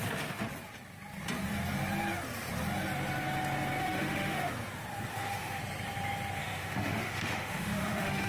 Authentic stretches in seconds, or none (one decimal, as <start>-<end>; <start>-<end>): 0.0-3.8; 4.5-5.1; 5.6-6.4